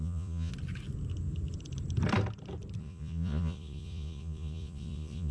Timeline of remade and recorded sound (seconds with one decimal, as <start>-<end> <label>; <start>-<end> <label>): 0.0-0.5 remade; 0.5-2.8 recorded; 2.8-5.3 remade